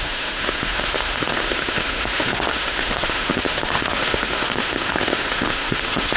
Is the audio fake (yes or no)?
yes